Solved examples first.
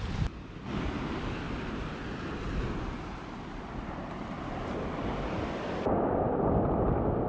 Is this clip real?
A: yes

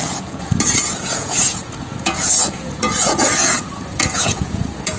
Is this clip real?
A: no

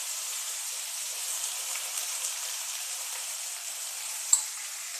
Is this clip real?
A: no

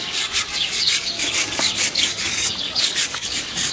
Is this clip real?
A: no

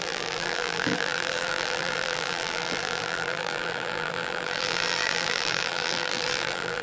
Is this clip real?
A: no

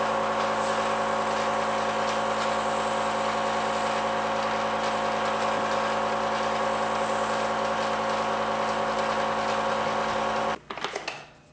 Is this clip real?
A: yes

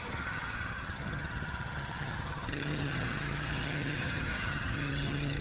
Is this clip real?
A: no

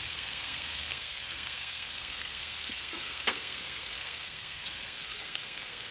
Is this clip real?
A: no